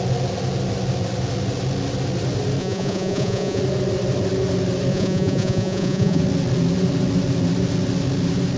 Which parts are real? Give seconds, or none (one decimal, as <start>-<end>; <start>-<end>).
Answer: 0.0-2.6; 3.6-4.9; 6.2-8.6